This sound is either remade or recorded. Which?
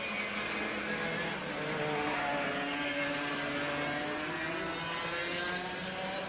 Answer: recorded